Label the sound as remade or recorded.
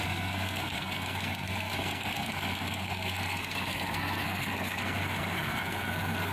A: remade